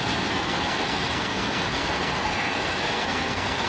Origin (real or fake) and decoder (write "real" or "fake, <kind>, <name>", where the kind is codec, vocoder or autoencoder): fake, codec, SNAC